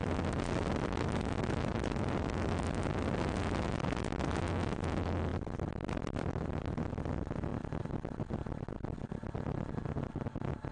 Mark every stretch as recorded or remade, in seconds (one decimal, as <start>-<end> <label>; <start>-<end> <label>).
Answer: 0.0-10.7 recorded

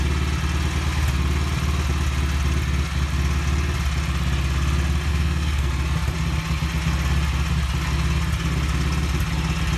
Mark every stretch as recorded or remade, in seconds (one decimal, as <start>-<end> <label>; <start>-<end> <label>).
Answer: 0.0-5.1 recorded; 5.1-5.7 remade; 5.7-9.8 recorded